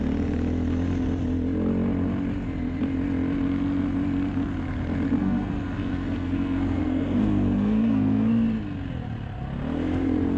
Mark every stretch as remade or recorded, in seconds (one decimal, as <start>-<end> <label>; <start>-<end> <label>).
0.0-5.2 recorded; 5.2-8.3 remade; 8.3-10.4 recorded